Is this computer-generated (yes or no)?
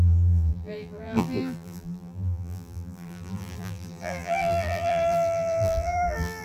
yes